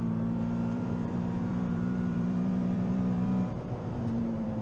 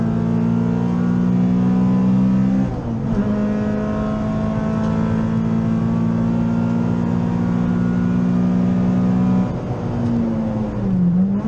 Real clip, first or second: second